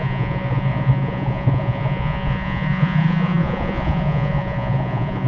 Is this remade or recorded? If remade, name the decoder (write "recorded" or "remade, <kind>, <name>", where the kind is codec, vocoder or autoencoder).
remade, vocoder, Vocos